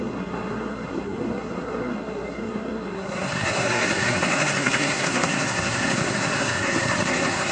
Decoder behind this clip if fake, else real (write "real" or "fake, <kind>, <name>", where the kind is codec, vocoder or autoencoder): fake, codec, SNAC